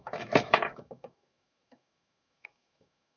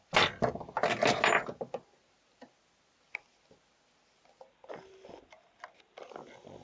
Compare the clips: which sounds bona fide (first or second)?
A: second